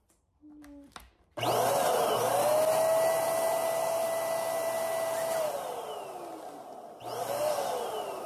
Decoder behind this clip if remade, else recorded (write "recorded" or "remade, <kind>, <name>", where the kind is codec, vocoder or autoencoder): recorded